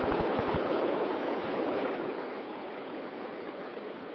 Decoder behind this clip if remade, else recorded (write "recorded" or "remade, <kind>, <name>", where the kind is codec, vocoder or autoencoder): remade, codec, HILCodec